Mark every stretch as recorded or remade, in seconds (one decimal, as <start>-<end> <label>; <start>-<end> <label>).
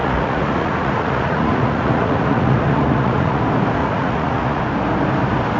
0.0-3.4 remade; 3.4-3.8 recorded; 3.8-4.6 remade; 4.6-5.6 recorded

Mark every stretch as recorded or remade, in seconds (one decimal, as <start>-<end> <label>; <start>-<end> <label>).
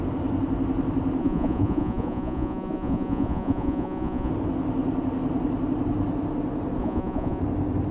0.0-1.2 recorded; 1.2-4.3 remade; 4.3-6.8 recorded; 6.8-7.4 remade; 7.4-7.9 recorded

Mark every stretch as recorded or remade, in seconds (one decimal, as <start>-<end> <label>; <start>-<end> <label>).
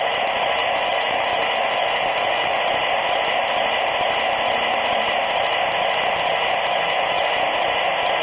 0.0-0.6 recorded; 0.6-2.6 remade; 2.6-6.7 recorded; 6.7-7.3 remade; 7.3-8.2 recorded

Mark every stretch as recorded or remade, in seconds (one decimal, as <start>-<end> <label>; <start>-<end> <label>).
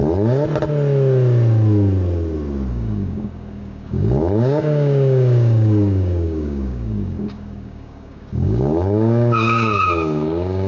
0.0-2.7 recorded; 2.7-10.7 remade